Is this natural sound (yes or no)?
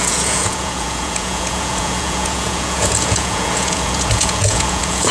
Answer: no